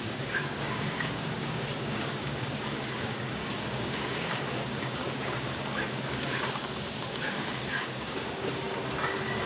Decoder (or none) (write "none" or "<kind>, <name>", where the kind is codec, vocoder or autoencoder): codec, DAC